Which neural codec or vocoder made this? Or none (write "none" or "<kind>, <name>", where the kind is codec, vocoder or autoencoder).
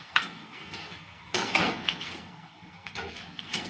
codec, SNAC